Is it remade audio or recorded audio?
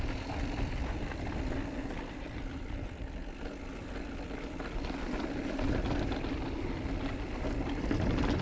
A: remade